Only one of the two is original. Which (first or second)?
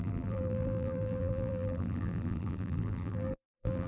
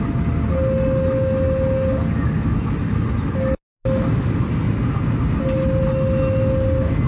second